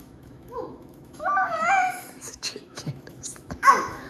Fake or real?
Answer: fake